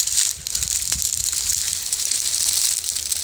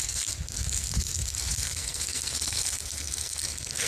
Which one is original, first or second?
first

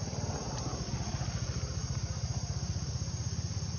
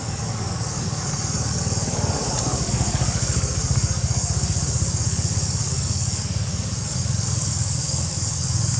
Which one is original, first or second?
first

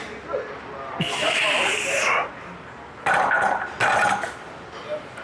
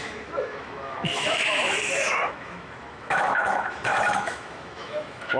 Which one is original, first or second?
first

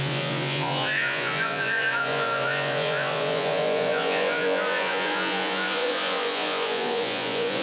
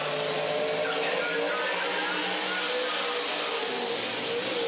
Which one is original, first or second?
second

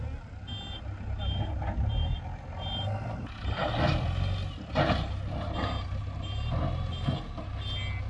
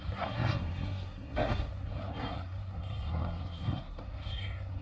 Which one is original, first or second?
first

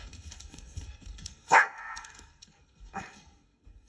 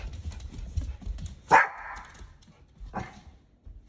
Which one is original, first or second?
second